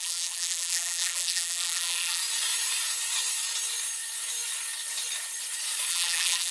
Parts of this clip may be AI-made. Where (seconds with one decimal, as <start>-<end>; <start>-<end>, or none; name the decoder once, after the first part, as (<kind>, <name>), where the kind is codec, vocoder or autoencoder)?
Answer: 0.0-2.2 (vocoder, BigVGAN v2); 5.9-6.5